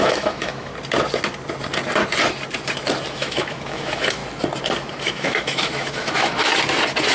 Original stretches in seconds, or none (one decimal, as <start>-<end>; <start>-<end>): 0.7-3.1; 4.2-5.0; 6.5-7.1